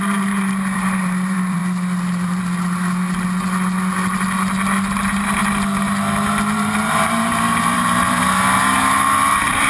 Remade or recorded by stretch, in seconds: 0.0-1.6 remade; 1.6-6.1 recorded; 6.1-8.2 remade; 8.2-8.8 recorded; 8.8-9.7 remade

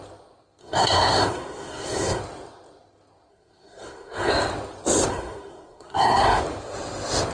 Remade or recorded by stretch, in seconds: 0.0-0.6 recorded; 0.6-2.2 remade; 2.2-3.3 recorded; 3.3-4.3 remade; 4.3-5.1 recorded; 5.1-6.4 remade; 6.4-7.3 recorded

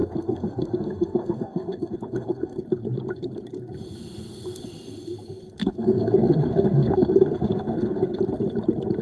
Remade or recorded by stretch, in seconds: 0.0-2.6 remade; 2.6-5.6 recorded; 5.6-8.2 remade; 8.2-9.0 recorded

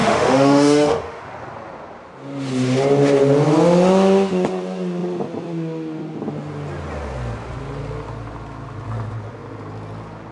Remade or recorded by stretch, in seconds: 0.0-1.2 remade; 1.2-10.3 recorded

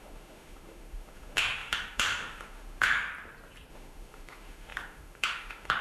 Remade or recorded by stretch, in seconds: 0.0-3.1 remade; 3.1-3.7 recorded; 3.7-5.8 remade